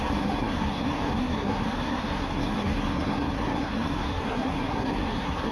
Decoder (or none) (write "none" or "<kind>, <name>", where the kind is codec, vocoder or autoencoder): codec, SNAC